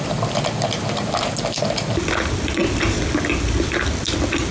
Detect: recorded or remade recorded